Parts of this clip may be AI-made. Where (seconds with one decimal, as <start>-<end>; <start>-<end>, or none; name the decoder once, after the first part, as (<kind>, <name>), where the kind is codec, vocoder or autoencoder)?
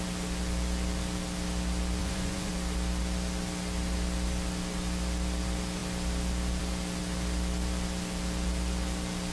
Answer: 2.0-2.5 (vocoder, Vocos)